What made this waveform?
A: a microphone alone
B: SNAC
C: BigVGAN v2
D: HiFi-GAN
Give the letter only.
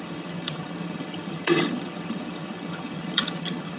D